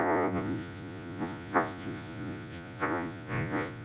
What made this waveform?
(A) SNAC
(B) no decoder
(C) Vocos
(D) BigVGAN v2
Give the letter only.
C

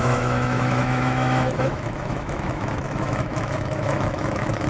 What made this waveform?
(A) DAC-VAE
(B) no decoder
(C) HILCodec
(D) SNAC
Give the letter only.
A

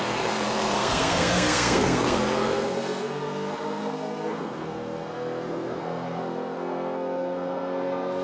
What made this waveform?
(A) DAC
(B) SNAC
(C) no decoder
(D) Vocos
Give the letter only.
B